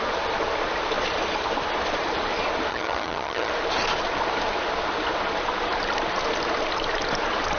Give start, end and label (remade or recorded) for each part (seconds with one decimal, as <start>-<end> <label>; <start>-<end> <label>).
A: 0.0-2.7 recorded; 2.7-3.5 remade; 3.5-7.6 recorded